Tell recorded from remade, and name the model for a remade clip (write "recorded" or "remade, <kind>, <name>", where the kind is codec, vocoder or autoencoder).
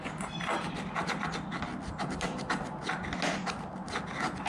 recorded